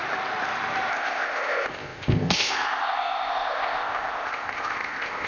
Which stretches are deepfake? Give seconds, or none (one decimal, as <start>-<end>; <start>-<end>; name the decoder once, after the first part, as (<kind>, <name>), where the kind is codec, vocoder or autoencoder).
0.9-5.3 (codec, ZipCodec)